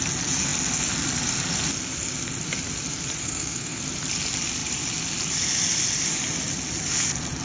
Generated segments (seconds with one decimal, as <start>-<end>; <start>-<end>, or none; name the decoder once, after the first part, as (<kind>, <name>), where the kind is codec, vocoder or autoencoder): 3.2-3.8 (codec, SNAC)